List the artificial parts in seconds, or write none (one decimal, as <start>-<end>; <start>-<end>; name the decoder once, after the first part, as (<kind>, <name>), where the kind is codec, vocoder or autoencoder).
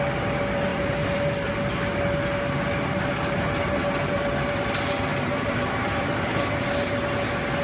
0.7-1.5 (vocoder, BigVGAN v2); 5.1-6.7